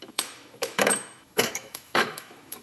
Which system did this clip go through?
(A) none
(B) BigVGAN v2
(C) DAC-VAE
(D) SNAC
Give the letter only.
C